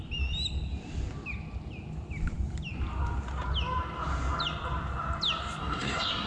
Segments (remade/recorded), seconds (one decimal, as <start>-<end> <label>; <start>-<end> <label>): 0.0-5.6 recorded; 5.6-6.3 remade